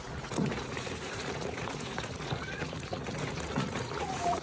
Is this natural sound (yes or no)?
no